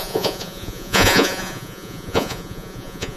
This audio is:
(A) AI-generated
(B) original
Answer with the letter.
A